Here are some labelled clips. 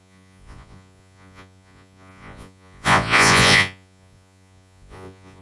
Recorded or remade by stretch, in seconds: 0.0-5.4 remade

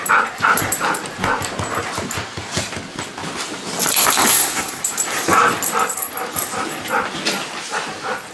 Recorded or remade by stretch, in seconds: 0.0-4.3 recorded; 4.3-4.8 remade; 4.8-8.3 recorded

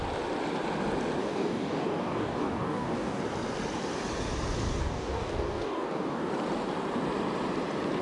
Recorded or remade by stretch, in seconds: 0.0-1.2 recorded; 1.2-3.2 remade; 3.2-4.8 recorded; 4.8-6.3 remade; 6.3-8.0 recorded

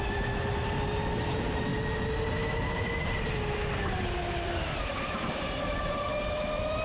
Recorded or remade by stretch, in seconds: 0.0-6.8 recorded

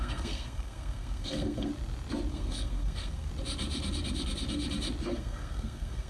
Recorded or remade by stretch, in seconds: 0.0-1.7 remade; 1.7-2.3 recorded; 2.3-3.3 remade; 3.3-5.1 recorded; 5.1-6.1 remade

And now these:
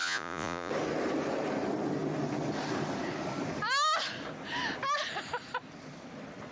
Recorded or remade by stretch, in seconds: 0.0-0.7 remade; 0.7-6.5 recorded

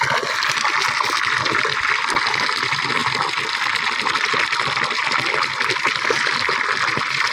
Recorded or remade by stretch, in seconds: 0.0-7.3 recorded

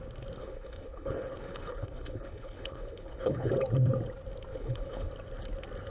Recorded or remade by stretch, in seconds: 0.0-0.4 recorded; 0.4-3.5 remade; 3.5-4.5 recorded; 4.5-5.1 remade; 5.1-5.9 recorded